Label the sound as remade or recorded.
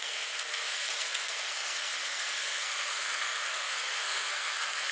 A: remade